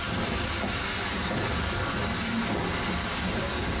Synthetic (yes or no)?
no